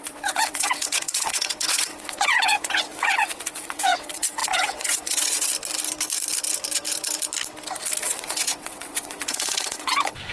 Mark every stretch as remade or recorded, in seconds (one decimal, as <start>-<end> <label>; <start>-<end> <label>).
0.0-5.5 remade; 5.5-8.0 recorded; 8.0-10.3 remade